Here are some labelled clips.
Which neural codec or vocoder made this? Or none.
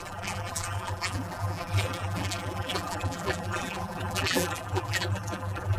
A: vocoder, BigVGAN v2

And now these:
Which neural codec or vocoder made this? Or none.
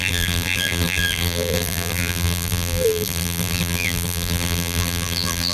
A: vocoder, BigVGAN v2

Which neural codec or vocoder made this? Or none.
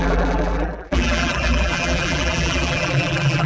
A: vocoder, BigVGAN v2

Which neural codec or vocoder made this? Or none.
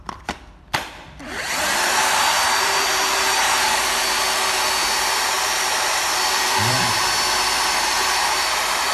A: vocoder, BigVGAN v2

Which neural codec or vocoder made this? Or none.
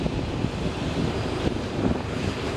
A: vocoder, BigVGAN v2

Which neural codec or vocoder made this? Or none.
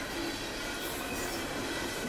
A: none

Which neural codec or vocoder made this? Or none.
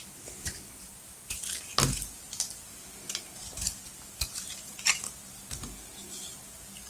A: none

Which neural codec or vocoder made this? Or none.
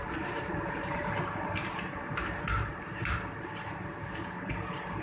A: vocoder, BigVGAN v2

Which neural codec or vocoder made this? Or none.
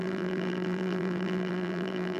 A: vocoder, BigVGAN v2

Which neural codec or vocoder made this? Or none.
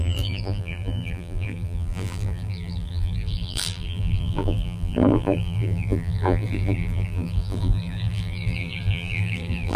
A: vocoder, BigVGAN v2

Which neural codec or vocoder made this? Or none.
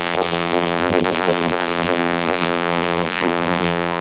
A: vocoder, BigVGAN v2